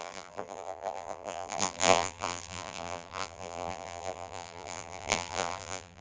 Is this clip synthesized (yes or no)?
yes